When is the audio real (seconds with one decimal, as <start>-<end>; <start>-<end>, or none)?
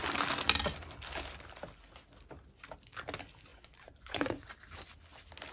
0.0-3.5; 4.5-5.5